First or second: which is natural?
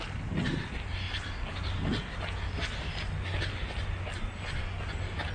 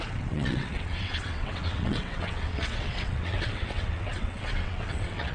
first